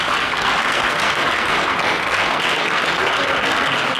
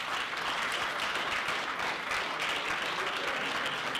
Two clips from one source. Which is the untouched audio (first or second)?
second